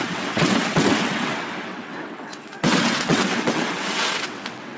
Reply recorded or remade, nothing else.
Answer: remade